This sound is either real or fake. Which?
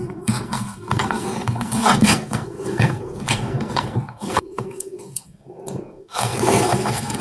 fake